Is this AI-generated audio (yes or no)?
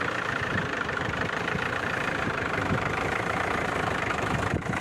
yes